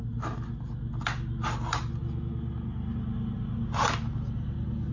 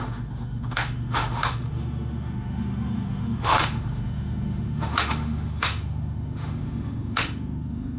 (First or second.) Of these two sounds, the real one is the first